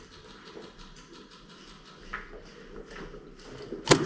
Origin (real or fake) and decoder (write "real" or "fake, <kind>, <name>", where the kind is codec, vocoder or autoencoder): real